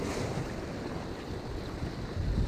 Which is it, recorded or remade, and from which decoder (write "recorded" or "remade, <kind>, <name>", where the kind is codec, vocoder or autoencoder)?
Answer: recorded